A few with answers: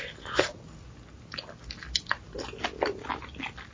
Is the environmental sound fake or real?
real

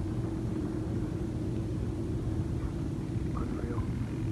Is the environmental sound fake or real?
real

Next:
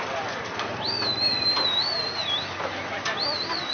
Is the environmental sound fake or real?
real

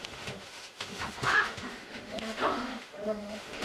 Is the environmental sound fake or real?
fake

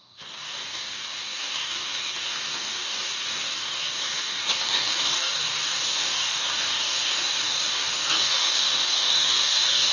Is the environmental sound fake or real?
fake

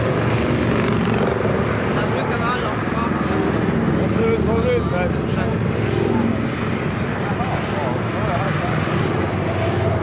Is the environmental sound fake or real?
real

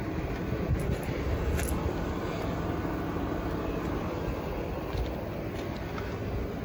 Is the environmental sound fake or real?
real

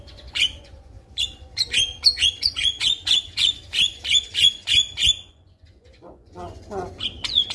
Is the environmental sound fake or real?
fake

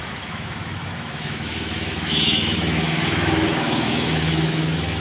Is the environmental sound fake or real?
fake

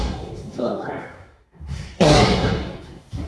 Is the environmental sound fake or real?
fake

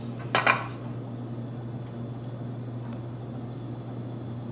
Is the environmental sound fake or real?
real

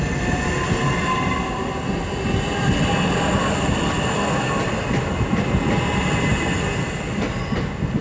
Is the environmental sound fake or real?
real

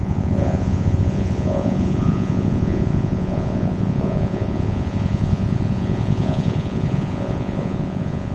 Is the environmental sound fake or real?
fake